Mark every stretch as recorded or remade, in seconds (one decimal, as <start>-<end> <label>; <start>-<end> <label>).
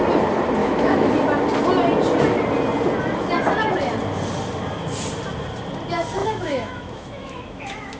0.0-0.6 recorded; 0.6-1.1 remade; 1.1-6.2 recorded; 6.2-8.0 remade